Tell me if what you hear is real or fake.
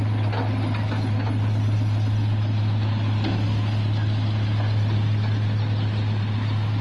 real